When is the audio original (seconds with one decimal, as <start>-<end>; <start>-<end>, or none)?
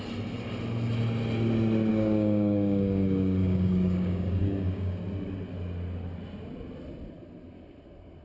0.0-1.9; 5.0-8.2